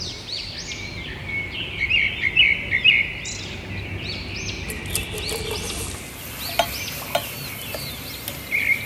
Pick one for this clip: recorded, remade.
recorded